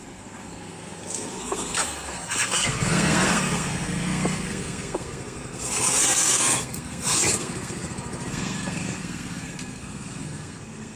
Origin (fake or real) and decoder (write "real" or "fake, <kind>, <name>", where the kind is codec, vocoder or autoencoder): fake, codec, SNAC